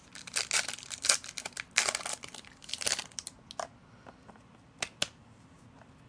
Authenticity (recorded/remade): recorded